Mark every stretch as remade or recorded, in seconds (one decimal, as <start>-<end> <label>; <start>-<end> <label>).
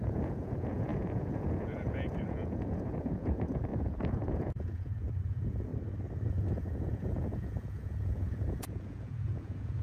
0.0-5.7 remade; 5.7-6.3 recorded; 6.3-9.8 remade